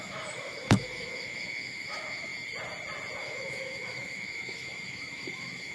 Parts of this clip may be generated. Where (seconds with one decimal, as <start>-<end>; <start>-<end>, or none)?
0.0-2.3; 3.2-5.7